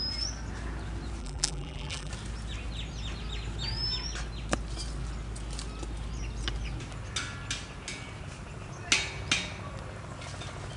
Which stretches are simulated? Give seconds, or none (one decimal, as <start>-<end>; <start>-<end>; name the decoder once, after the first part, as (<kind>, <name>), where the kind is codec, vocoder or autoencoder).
1.2-2.1 (vocoder, BigVGAN v2)